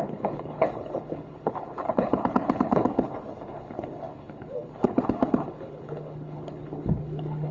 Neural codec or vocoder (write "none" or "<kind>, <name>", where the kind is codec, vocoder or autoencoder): codec, HILCodec